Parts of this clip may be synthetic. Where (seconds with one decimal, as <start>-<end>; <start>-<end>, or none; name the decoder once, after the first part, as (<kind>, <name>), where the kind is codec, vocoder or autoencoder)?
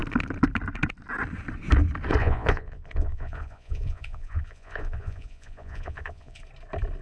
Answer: 2.2-6.4 (vocoder, Vocos)